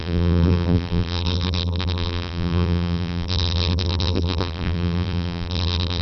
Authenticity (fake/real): fake